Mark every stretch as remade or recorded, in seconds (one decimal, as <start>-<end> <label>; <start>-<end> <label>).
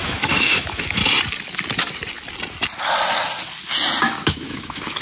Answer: 0.0-1.0 remade; 1.0-4.0 recorded; 4.0-5.0 remade